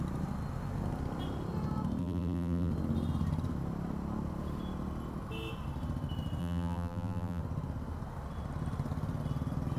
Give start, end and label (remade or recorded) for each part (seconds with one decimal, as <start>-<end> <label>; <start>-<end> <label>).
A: 0.0-2.0 recorded; 2.0-2.7 remade; 2.7-6.4 recorded; 6.4-7.4 remade; 7.4-9.8 recorded